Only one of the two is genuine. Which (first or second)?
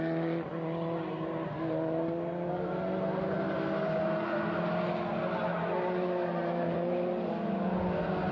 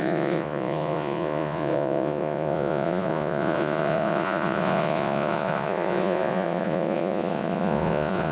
first